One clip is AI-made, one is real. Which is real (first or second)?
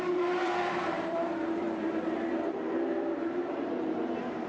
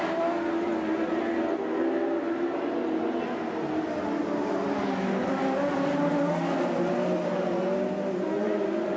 second